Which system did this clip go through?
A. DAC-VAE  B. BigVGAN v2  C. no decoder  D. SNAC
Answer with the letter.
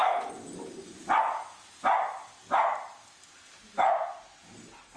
C